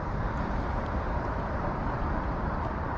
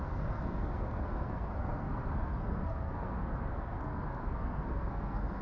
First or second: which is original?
first